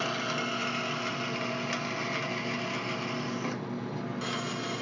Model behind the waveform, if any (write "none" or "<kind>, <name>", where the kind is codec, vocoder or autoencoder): none